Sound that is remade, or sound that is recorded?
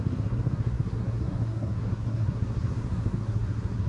remade